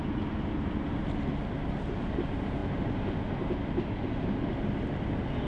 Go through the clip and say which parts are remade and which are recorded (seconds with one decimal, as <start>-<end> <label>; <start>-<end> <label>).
0.0-5.5 recorded